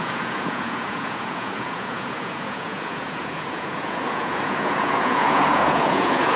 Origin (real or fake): fake